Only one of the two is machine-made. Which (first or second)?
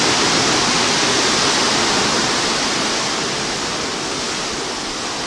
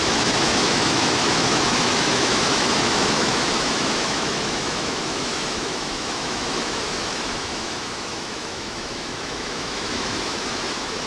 second